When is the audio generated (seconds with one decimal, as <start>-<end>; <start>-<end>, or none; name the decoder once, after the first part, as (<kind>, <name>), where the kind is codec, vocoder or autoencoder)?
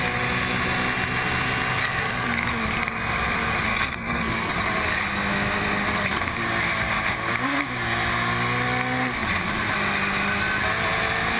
1.8-2.5 (codec, SNAC); 3.7-4.5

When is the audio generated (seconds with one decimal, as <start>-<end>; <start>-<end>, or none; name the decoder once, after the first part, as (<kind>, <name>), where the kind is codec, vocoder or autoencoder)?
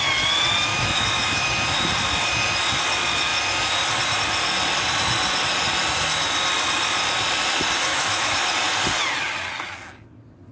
0.7-1.5 (autoencoder, DAC-VAE); 7.9-8.5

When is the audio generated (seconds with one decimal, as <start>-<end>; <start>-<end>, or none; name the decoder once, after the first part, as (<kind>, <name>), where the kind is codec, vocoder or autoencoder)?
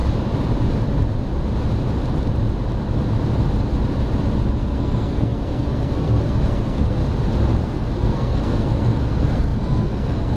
4.6-7.0 (codec, SNAC); 7.6-10.4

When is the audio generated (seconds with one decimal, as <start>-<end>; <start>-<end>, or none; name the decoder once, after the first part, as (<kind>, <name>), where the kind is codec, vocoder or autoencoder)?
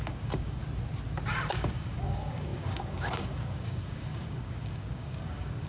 0.0-0.6 (codec, DAC); 1.5-5.7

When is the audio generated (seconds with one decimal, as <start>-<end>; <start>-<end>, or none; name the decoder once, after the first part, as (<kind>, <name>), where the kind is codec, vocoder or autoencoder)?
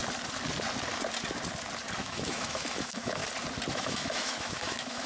2.0-3.2 (autoencoder, DAC-VAE); 3.7-5.1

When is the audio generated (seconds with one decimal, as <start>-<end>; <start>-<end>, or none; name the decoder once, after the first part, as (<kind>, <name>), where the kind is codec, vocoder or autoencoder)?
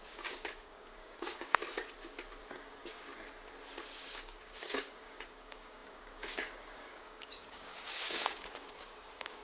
0.0-1.6 (codec, DAC); 2.4-3.1; 4.0-9.4